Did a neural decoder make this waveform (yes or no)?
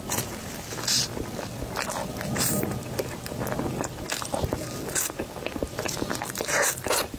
no